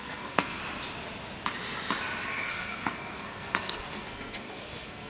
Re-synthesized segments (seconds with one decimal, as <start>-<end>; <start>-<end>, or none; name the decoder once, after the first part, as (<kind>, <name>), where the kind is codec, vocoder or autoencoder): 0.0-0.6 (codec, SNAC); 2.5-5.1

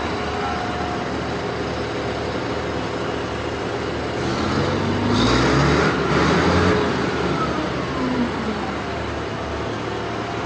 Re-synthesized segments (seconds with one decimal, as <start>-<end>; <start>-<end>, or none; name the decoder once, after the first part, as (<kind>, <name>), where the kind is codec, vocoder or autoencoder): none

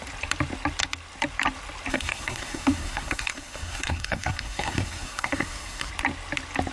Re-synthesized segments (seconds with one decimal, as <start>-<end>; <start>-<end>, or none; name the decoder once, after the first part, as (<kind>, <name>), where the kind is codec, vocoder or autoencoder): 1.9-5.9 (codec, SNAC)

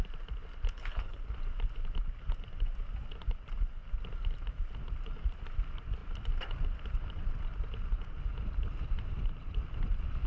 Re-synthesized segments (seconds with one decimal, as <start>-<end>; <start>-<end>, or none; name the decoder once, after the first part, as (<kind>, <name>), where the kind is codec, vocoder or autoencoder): 0.7-1.2 (codec, HILCodec)

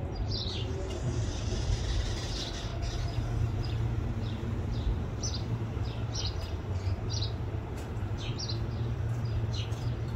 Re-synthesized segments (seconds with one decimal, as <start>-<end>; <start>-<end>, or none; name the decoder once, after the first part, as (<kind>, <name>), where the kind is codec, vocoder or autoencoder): 0.0-10.2 (vocoder, BigVGAN v2)

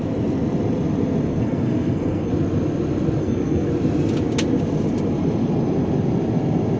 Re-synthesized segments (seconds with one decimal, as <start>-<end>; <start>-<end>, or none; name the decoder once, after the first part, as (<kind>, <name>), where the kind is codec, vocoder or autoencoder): 1.3-2.3 (codec, SNAC); 3.2-3.7

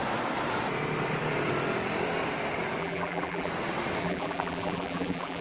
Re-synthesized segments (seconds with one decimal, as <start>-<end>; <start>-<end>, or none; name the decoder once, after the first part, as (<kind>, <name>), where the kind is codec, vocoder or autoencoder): 2.8-3.5 (vocoder, BigVGAN v2); 4.0-5.4

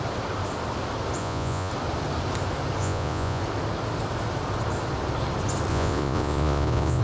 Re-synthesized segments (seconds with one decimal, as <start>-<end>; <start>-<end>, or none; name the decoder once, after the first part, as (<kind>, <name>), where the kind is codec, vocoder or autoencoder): 1.2-1.7 (vocoder, Vocos); 2.8-3.4; 5.7-7.0